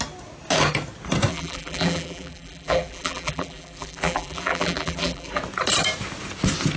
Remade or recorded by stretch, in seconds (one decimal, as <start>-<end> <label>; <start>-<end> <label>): 0.0-1.3 recorded; 1.3-5.4 remade; 5.4-6.8 recorded